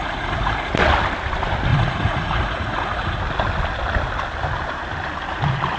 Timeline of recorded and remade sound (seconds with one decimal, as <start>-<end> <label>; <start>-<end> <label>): 0.0-0.7 remade; 0.7-1.7 recorded; 1.7-3.2 remade; 3.2-5.8 recorded